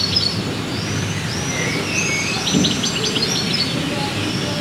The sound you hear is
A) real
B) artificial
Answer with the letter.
A